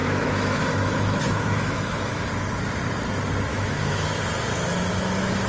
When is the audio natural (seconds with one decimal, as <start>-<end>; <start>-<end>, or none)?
2.3-3.5; 4.1-5.5